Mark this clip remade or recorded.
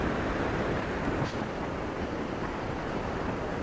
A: remade